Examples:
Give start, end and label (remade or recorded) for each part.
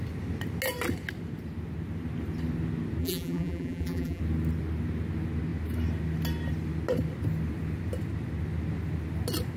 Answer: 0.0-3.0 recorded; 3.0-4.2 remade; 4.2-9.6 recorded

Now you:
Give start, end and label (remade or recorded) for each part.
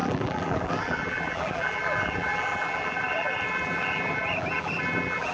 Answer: 0.0-5.3 remade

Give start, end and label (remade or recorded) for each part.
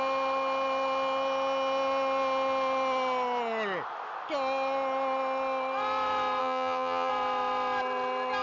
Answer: 0.0-6.4 recorded; 6.4-7.1 remade; 7.1-8.4 recorded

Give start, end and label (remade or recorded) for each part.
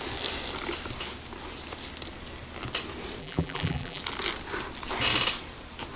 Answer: 0.0-3.2 recorded; 3.2-4.0 remade; 4.0-6.0 recorded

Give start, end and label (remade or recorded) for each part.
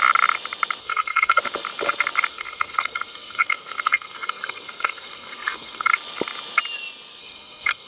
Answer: 0.0-0.8 recorded; 0.8-1.4 remade; 1.4-2.3 recorded; 2.3-5.9 remade; 5.9-7.2 recorded; 7.2-7.9 remade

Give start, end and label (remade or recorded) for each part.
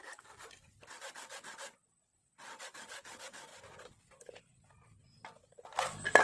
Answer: 0.0-2.1 recorded; 2.1-2.6 remade; 2.6-6.2 recorded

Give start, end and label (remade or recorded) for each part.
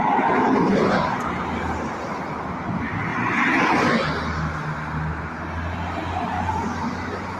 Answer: 0.0-7.4 recorded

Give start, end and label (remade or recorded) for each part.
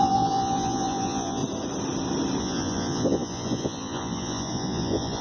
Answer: 0.0-1.4 remade; 1.4-2.4 recorded; 2.4-5.2 remade